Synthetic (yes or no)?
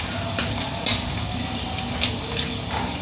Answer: no